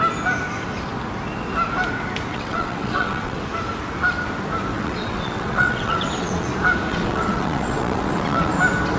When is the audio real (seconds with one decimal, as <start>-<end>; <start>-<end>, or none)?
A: 0.0-2.3; 3.4-4.7; 6.5-6.9; 8.5-9.0